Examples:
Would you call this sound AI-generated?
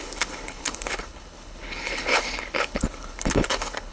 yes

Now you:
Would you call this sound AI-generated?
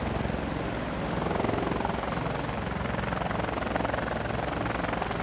no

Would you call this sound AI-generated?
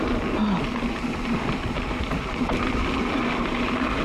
no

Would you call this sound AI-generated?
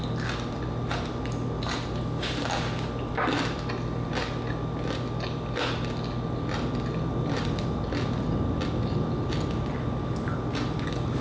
no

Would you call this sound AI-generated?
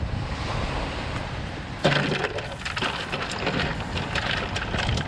no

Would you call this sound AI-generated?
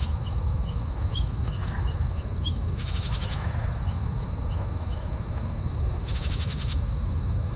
yes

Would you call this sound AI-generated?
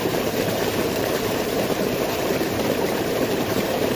yes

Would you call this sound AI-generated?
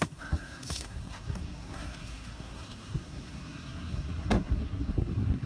yes